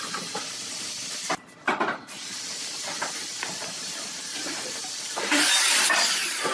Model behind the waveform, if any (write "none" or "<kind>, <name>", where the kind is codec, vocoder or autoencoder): vocoder, BigVGAN v2